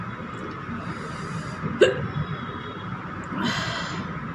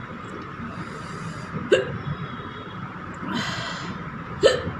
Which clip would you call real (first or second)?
first